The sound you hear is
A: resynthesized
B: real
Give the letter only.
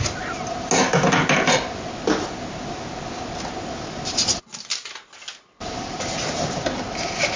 B